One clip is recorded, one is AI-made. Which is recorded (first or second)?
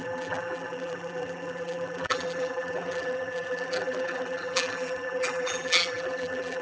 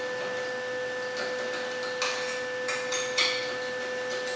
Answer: second